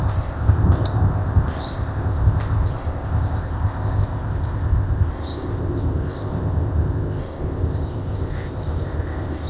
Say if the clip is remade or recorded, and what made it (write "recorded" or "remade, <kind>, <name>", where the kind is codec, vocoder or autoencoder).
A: remade, codec, ZipCodec